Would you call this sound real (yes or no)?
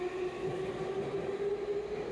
yes